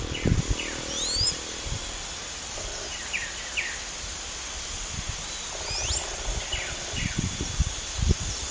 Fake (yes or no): no